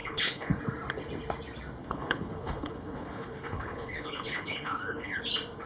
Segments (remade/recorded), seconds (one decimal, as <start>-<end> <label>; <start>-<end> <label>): 0.0-0.6 remade; 0.6-1.8 recorded; 1.8-5.2 remade; 5.2-5.7 recorded